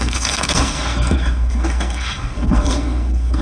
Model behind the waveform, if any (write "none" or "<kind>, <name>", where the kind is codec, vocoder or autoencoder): codec, SNAC